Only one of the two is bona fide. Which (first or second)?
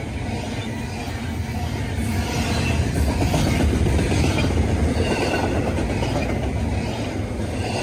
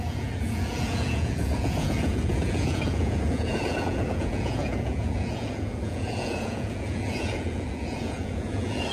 first